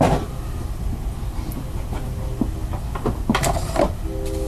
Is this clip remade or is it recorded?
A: recorded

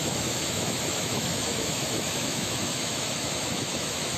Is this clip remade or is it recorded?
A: remade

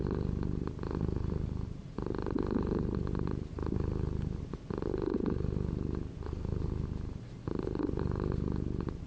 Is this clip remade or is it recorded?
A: recorded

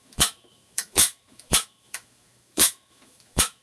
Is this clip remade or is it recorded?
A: remade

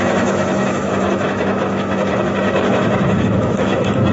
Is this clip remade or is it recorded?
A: remade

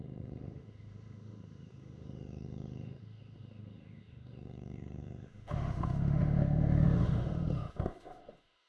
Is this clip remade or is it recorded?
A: remade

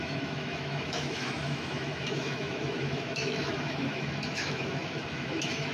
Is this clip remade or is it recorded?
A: remade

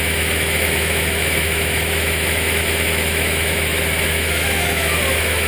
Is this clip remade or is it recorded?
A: remade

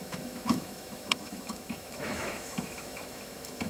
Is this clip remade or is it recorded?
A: remade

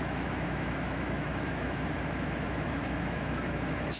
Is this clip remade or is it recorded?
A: remade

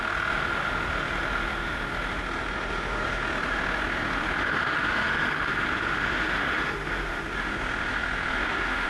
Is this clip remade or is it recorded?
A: remade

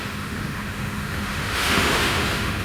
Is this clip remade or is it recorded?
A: remade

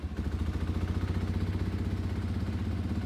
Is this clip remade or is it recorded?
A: recorded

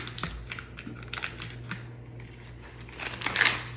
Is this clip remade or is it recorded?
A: recorded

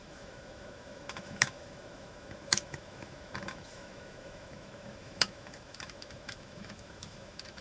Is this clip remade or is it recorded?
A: remade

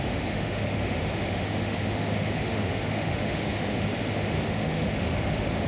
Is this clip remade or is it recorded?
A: remade